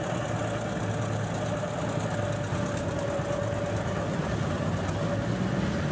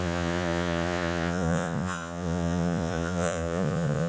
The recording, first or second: first